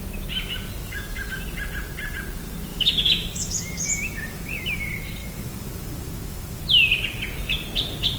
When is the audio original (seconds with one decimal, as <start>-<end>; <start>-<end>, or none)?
0.0-0.8; 1.4-2.7; 4.8-5.2; 6.6-8.2